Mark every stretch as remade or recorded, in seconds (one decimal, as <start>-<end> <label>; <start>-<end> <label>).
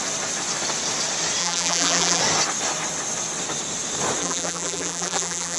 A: 0.0-1.4 recorded; 1.4-2.2 remade; 2.2-4.2 recorded; 4.2-5.6 remade